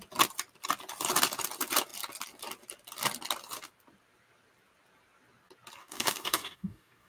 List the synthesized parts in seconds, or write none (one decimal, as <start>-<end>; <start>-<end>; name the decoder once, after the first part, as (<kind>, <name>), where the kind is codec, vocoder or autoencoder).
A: 5.8-7.1 (codec, DAC)